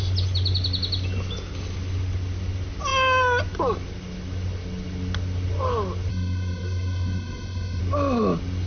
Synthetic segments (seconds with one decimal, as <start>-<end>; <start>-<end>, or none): 6.1-7.8